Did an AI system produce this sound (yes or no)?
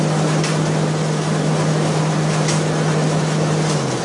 no